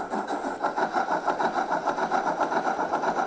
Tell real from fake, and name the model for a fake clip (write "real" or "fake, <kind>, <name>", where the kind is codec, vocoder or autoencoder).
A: real